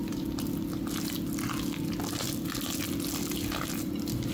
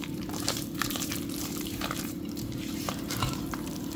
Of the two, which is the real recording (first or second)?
first